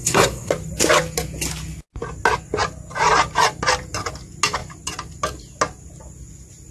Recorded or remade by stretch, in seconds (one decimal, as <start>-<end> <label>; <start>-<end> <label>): 0.0-0.5 remade; 0.5-6.7 recorded